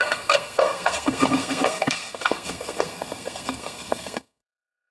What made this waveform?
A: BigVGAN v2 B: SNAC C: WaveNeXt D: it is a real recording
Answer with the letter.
B